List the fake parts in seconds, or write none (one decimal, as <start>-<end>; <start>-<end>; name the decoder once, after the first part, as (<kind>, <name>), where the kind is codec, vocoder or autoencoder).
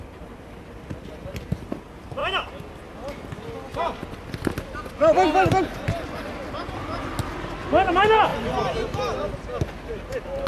none